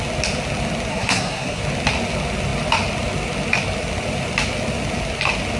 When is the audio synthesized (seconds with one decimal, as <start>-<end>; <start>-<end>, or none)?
0.9-1.6

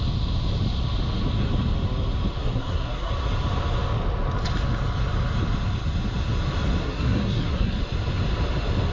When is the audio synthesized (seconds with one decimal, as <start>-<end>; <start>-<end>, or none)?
2.4-3.1; 6.8-7.8

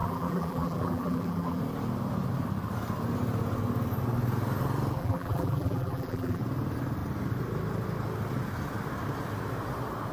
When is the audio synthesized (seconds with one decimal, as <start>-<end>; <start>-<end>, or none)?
0.0-1.6; 5.0-6.4

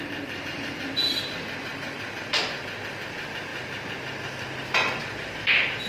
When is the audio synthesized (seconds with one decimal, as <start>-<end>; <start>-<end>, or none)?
none

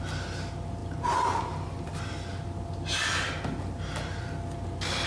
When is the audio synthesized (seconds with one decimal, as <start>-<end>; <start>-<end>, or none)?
none